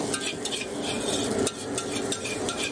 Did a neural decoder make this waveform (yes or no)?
no